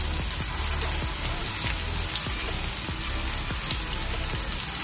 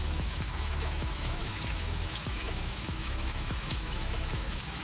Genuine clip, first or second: first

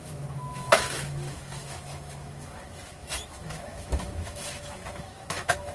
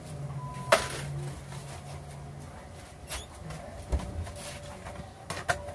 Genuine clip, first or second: second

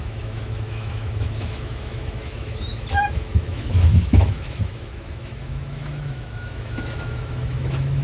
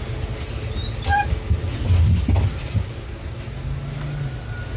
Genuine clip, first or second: second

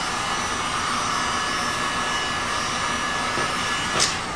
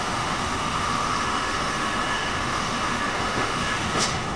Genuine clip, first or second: first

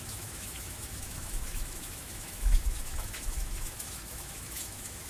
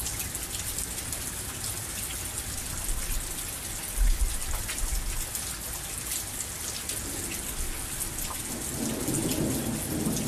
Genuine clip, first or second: second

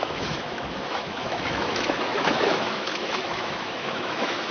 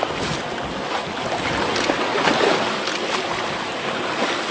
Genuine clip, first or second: second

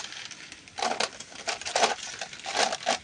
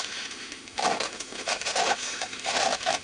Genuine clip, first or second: first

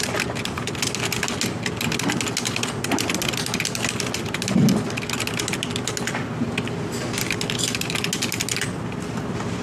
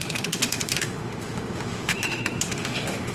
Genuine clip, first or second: first